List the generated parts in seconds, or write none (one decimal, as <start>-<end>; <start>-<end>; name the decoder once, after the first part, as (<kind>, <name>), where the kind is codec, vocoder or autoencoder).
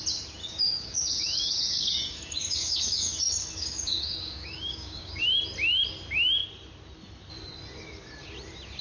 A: 0.4-5.2 (codec, DAC)